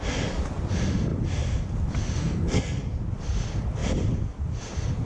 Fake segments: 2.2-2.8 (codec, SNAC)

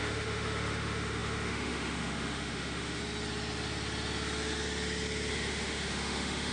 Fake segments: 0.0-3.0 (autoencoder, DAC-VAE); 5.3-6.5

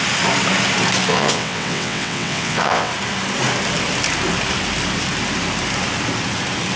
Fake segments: 1.1-2.9 (vocoder, WaveNeXt)

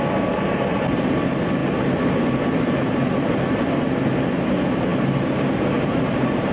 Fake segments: none